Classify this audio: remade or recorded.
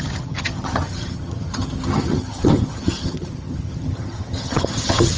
remade